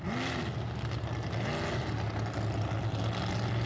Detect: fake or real real